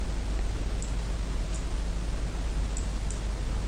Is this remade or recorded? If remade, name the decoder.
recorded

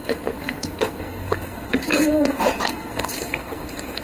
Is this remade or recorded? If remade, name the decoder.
remade, codec, SNAC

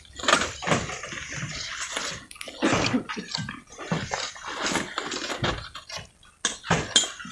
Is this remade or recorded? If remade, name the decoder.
recorded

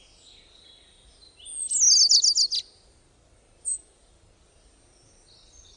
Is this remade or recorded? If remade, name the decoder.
recorded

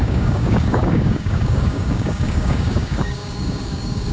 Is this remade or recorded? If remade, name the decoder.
remade, codec, DAC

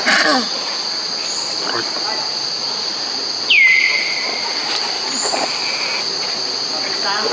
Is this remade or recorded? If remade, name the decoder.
recorded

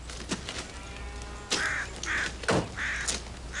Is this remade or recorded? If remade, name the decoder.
recorded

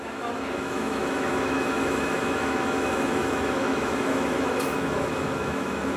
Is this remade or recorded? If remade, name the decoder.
remade, autoencoder, DAC-VAE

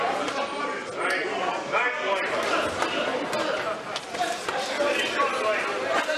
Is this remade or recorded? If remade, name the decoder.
recorded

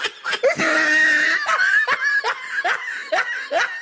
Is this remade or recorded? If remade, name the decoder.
recorded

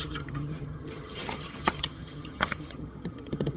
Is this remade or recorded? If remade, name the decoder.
remade, vocoder, HiFi-GAN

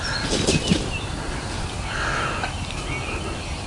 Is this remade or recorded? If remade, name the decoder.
recorded